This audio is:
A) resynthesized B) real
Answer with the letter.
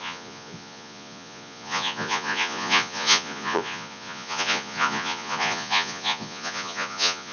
A